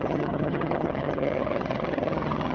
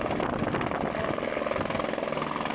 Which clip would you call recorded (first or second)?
second